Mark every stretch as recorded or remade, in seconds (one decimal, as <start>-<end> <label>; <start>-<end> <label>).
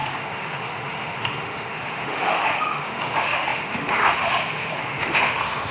0.0-5.7 remade